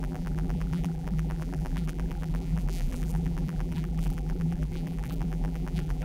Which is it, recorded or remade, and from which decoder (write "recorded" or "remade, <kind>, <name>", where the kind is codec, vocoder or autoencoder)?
remade, vocoder, BigVGAN v2